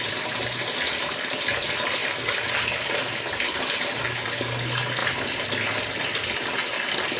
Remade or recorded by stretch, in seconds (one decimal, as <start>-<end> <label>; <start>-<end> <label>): 0.0-7.2 recorded